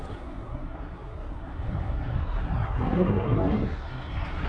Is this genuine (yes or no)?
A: no